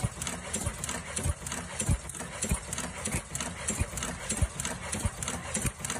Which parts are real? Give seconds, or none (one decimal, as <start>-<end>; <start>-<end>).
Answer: 0.0-6.0